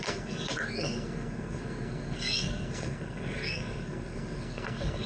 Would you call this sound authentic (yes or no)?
no